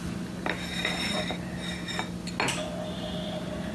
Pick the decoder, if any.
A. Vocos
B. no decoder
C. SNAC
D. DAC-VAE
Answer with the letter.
B